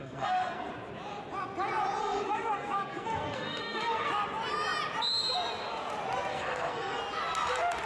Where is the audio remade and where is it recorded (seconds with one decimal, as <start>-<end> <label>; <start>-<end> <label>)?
0.0-0.7 remade; 0.7-2.0 recorded; 2.0-4.1 remade; 4.1-6.3 recorded; 6.3-7.0 remade; 7.0-7.9 recorded